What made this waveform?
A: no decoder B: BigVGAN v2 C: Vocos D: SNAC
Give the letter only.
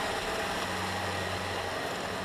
A